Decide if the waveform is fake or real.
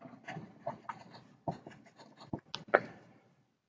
real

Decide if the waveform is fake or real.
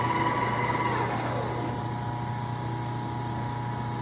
real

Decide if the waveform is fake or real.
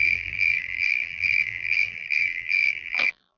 fake